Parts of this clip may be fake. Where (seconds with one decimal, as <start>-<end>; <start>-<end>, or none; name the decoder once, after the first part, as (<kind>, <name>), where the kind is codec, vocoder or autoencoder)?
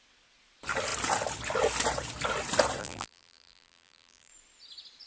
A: 2.8-4.3 (vocoder, BigVGAN v2)